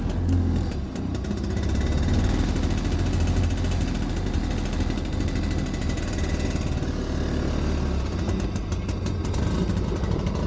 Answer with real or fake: real